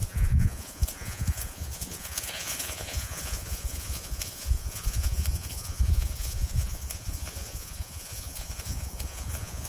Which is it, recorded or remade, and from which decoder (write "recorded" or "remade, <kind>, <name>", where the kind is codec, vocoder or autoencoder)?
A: remade, vocoder, Vocos